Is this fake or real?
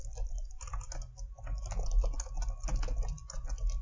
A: real